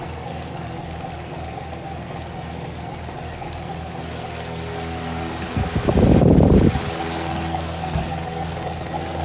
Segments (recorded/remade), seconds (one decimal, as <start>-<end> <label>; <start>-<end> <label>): 0.0-5.6 remade; 5.6-7.0 recorded; 7.0-9.2 remade